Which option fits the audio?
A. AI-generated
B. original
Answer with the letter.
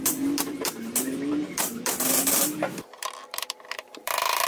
A